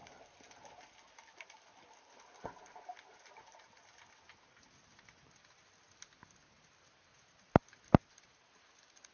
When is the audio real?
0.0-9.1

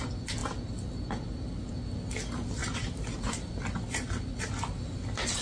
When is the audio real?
0.0-2.6; 3.5-5.4

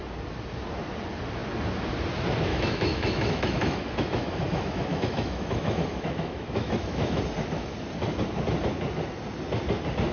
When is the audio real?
0.0-2.5; 7.2-10.1